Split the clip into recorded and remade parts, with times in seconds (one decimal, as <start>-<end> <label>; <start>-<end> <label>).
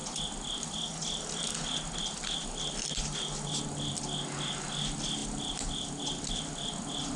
0.0-7.2 recorded